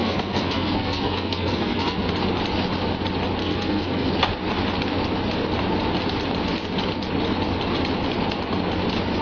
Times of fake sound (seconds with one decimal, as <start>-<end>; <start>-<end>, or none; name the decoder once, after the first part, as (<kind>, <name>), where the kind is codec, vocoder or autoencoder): 0.0-2.1 (codec, SNAC); 3.4-4.1